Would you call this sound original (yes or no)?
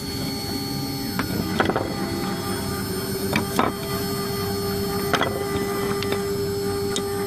yes